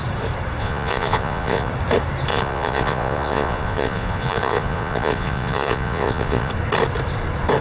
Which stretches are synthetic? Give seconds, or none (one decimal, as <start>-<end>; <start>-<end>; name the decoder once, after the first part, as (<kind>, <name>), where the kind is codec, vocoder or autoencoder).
0.6-1.7 (vocoder, Vocos); 2.3-6.5